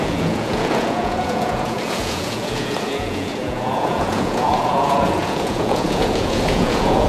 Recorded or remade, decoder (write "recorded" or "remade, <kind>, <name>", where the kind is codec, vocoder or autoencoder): remade, vocoder, Vocos